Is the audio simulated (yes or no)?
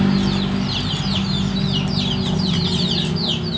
no